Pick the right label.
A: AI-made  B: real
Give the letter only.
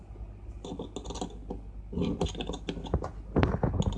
B